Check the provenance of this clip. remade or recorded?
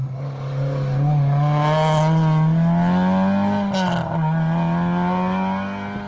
recorded